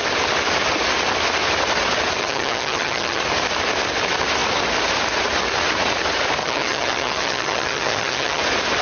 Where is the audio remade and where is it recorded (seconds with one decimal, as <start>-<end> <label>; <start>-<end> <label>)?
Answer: 0.0-2.2 recorded; 2.2-3.2 remade; 3.2-6.4 recorded; 6.4-8.4 remade; 8.4-8.8 recorded